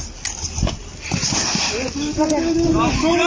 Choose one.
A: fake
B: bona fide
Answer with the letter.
B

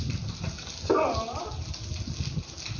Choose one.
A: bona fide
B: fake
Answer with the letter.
A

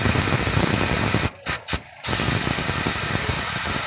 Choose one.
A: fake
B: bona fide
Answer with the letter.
B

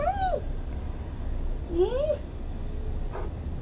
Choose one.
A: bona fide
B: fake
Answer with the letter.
A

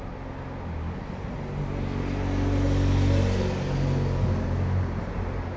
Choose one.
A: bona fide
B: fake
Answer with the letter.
A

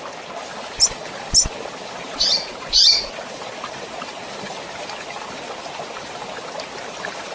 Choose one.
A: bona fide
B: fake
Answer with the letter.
A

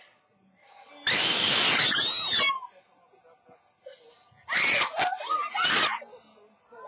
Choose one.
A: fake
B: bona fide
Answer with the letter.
B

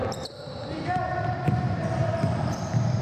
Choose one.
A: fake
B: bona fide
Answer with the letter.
B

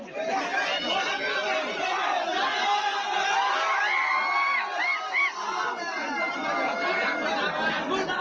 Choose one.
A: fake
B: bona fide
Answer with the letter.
B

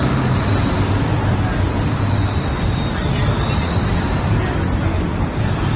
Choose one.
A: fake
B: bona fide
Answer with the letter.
B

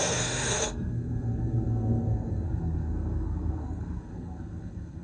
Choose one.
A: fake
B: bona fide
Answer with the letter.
A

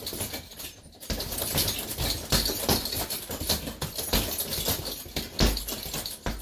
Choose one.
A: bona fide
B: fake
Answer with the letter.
A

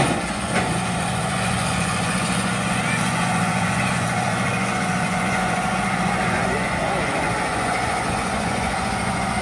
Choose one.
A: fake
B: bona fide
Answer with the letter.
A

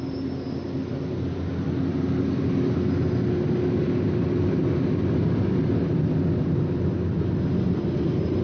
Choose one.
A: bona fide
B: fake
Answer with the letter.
A